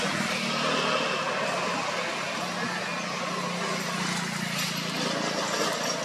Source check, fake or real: real